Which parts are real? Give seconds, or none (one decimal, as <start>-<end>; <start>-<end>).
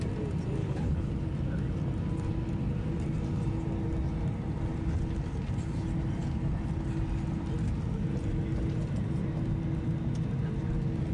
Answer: 0.0-0.6; 1.1-11.1